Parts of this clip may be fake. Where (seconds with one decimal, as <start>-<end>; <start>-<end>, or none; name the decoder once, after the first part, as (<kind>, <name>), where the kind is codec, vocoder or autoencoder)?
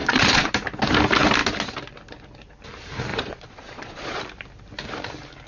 0.0-0.5 (vocoder, Vocos); 3.1-4.2